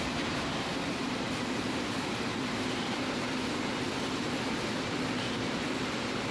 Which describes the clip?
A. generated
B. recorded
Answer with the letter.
A